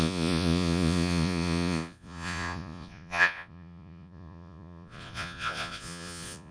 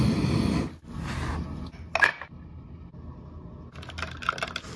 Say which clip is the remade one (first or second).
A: first